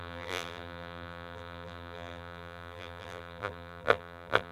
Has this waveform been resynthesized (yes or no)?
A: yes